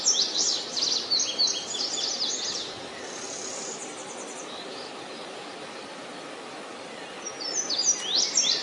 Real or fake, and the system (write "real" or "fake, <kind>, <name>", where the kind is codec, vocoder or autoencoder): real